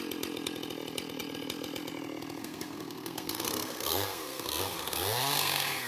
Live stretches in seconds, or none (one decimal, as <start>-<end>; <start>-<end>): 0.0-2.4